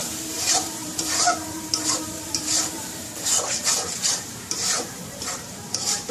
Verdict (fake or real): fake